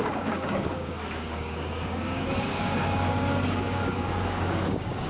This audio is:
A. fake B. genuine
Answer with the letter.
A